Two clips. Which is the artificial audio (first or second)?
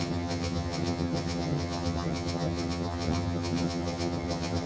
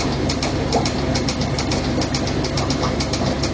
first